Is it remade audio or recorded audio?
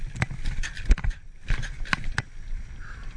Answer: recorded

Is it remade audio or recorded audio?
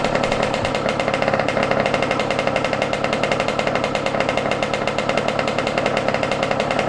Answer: recorded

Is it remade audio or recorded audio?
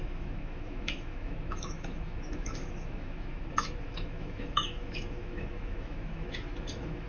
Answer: remade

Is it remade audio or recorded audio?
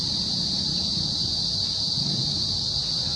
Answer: recorded